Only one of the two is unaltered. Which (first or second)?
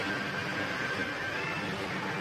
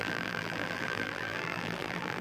first